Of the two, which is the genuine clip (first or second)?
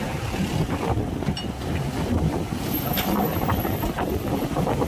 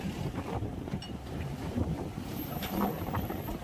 first